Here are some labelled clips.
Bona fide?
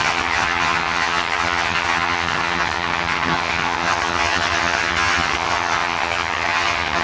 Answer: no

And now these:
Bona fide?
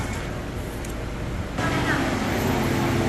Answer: yes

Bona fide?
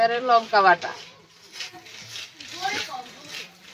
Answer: no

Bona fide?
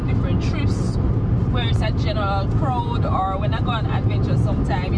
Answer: yes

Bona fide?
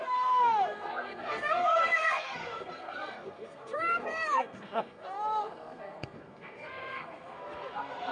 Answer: no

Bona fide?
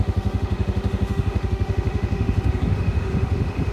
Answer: no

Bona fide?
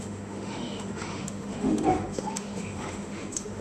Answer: no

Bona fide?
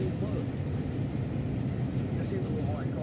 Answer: yes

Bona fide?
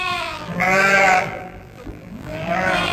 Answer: no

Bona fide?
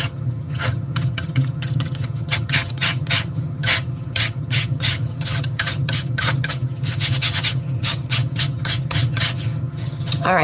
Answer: no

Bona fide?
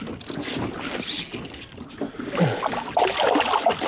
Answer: yes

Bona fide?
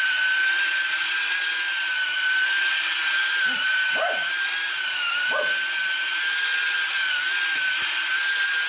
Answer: yes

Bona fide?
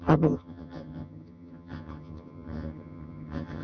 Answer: no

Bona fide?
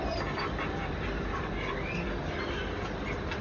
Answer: yes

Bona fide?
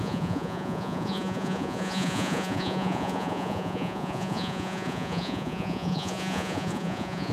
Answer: no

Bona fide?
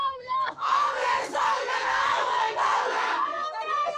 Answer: no